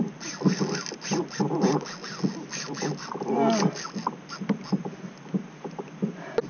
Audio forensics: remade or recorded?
recorded